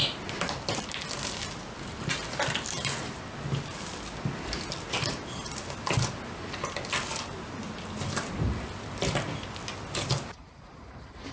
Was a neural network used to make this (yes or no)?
no